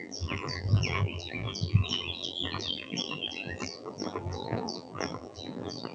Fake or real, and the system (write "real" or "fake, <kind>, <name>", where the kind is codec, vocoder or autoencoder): fake, vocoder, BigVGAN v2